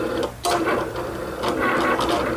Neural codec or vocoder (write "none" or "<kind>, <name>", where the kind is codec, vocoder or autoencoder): none